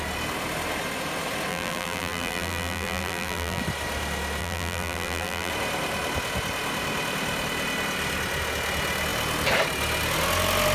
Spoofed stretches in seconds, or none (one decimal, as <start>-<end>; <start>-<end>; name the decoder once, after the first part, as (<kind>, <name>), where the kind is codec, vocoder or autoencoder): 1.5-3.6 (vocoder, BigVGAN v2); 4.4-5.5